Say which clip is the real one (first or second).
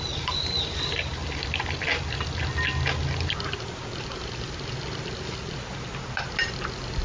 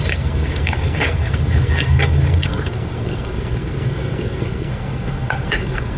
first